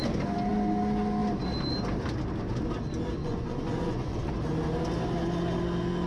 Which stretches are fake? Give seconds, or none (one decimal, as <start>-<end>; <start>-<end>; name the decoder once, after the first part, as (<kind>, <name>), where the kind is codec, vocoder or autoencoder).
3.2-4.3 (vocoder, Vocos)

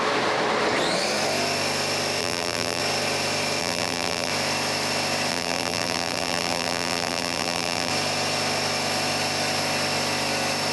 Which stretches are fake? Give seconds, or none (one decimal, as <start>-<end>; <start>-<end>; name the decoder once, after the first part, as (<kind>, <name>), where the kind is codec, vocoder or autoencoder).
2.2-2.8 (vocoder, BigVGAN v2); 3.6-4.3; 5.3-7.9

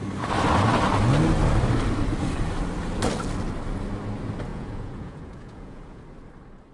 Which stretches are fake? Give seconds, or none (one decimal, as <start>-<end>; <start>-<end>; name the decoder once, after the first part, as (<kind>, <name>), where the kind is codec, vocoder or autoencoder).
4.5-6.0 (vocoder, Vocos)

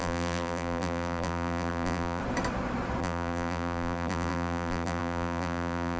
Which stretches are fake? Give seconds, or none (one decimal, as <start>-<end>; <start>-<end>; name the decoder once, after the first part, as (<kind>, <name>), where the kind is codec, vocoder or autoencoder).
0.0-2.2 (vocoder, BigVGAN v2); 3.0-6.0

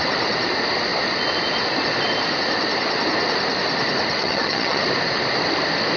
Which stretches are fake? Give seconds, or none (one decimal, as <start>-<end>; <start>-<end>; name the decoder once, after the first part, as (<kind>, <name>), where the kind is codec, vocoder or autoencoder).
4.2-4.8 (vocoder, HiFi-GAN)